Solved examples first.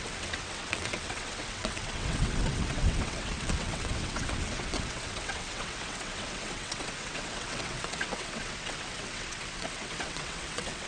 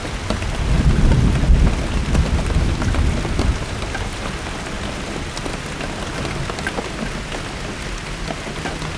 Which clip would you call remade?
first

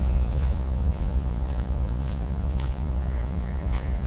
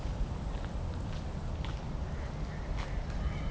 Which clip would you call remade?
first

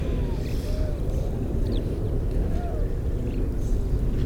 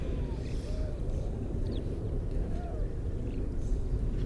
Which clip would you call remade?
second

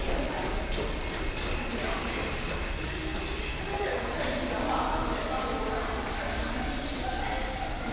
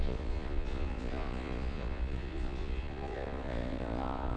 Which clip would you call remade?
second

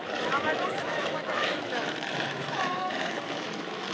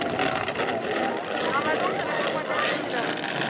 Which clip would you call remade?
first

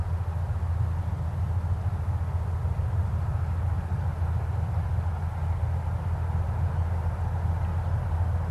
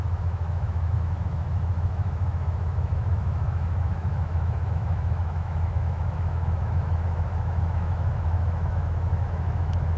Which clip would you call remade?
second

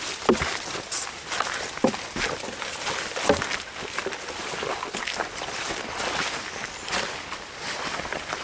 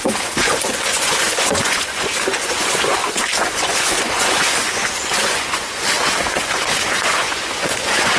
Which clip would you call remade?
second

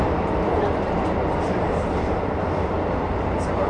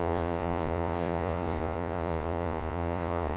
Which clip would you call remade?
second